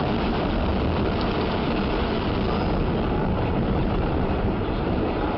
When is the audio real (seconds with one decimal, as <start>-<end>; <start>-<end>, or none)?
0.7-3.3